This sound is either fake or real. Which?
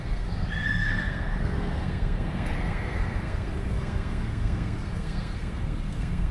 fake